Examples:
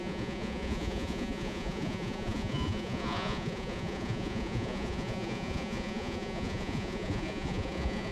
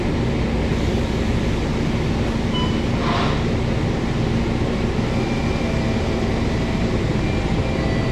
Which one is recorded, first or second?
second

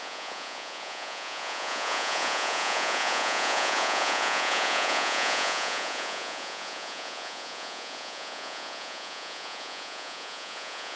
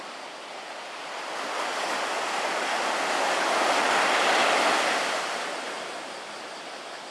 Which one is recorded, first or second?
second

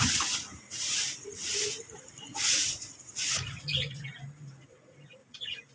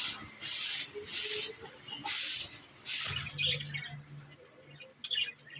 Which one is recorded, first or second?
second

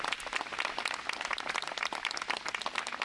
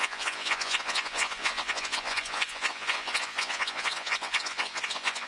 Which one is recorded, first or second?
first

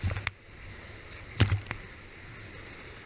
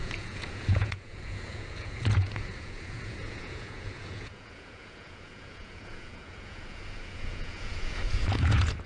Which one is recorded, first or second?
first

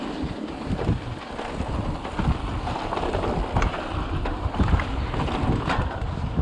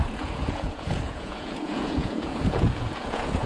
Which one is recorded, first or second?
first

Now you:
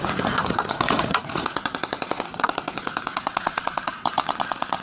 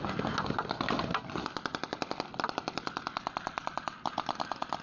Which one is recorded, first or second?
second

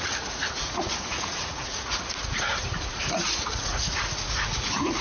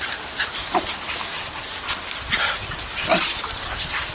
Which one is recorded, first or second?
second